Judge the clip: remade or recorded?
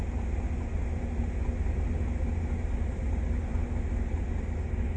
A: recorded